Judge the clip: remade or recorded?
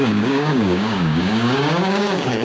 remade